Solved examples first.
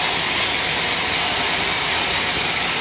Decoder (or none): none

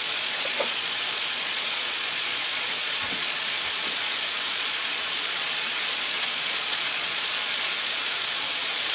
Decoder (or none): vocoder, Vocos